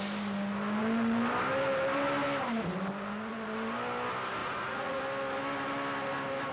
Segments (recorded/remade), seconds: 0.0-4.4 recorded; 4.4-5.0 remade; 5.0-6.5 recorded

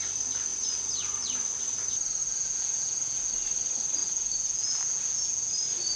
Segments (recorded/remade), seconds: 0.0-2.2 recorded; 2.2-3.3 remade; 3.3-4.0 recorded; 4.0-5.5 remade; 5.5-6.0 recorded

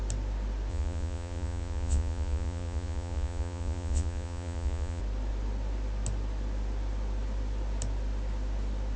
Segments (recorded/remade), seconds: 0.0-0.7 recorded; 0.7-5.0 remade; 5.0-9.0 recorded

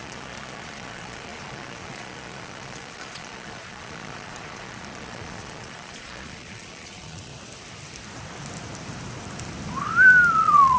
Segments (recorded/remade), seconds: 0.0-7.3 remade; 7.3-10.3 recorded; 10.3-10.8 remade